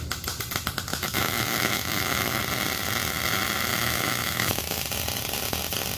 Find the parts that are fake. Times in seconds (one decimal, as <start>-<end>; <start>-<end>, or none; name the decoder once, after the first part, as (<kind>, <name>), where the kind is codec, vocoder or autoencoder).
0.9-2.4 (autoencoder, DAC-VAE); 3.7-4.8